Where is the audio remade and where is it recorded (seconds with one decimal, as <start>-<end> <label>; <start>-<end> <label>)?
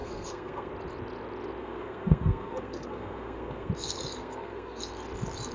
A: 0.0-0.7 remade; 0.7-1.6 recorded; 1.6-3.7 remade; 3.7-4.2 recorded; 4.2-4.8 remade; 4.8-5.5 recorded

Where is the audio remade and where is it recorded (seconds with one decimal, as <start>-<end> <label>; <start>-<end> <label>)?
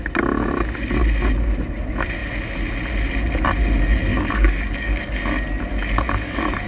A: 0.0-4.1 recorded; 4.1-5.2 remade; 5.2-5.7 recorded; 5.7-6.7 remade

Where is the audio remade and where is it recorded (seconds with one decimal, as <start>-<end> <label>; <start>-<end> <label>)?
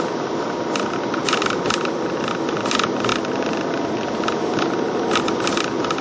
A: 0.0-6.0 recorded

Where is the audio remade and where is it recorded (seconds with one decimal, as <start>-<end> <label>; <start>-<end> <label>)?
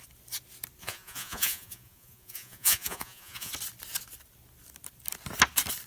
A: 0.0-0.8 recorded; 0.8-3.5 remade; 3.5-5.9 recorded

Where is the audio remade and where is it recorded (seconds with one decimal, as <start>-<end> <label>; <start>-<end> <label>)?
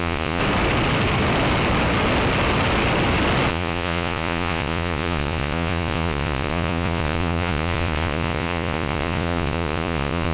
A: 0.0-0.4 remade; 0.4-3.5 recorded; 3.5-10.3 remade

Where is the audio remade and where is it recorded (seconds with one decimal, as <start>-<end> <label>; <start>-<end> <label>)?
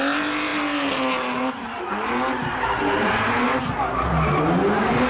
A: 0.0-5.1 recorded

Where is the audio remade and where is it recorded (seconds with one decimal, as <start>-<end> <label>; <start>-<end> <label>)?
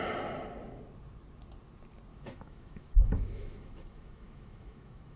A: 0.0-2.1 recorded; 2.1-5.2 remade